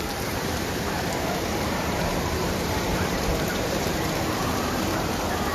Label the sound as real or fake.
fake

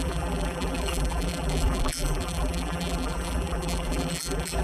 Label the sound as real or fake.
fake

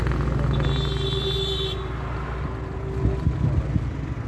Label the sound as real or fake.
real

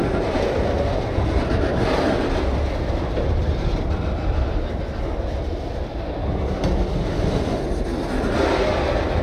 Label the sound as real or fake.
real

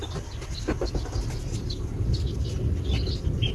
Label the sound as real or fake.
real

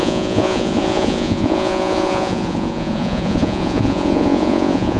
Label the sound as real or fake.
fake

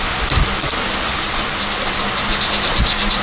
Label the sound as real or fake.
real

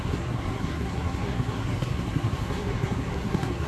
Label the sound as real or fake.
fake